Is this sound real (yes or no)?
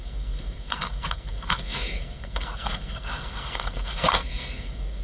no